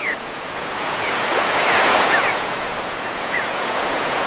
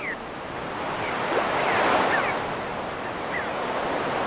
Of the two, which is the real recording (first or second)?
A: second